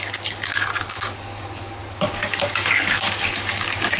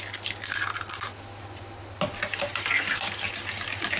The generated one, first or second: first